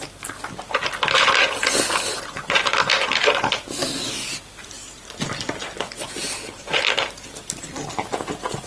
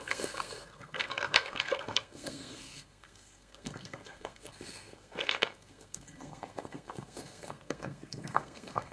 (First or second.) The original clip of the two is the first